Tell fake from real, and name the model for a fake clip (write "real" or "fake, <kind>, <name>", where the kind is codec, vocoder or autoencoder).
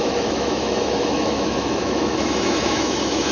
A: fake, autoencoder, DAC-VAE